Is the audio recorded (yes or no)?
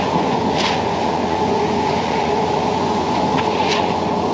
no